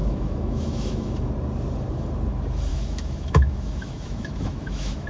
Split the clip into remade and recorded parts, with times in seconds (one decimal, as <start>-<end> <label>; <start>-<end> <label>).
0.0-1.3 remade; 1.3-2.7 recorded; 2.7-5.1 remade